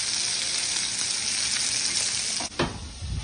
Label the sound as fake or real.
real